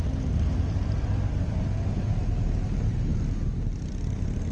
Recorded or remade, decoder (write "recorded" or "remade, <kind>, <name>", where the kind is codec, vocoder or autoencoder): recorded